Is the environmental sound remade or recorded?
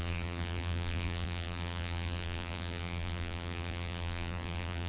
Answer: remade